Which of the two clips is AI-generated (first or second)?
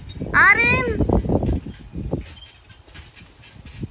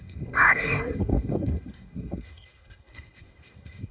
second